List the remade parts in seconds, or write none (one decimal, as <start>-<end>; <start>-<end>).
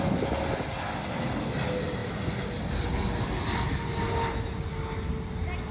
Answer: none